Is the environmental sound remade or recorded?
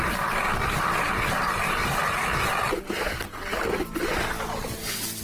recorded